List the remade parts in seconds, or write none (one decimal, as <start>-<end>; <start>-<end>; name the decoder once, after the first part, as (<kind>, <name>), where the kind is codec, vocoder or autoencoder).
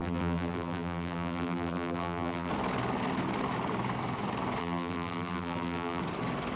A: 0.0-2.5 (vocoder, BigVGAN v2); 4.6-6.0